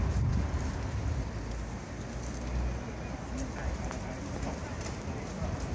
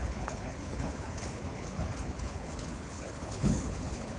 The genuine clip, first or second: first